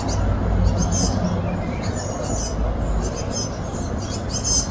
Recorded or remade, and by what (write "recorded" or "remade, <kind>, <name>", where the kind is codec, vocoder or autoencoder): recorded